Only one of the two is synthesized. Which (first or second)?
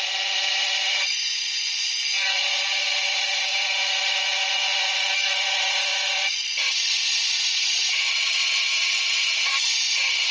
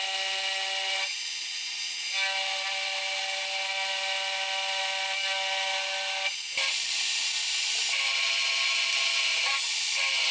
first